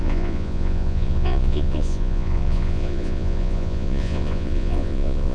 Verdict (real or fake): fake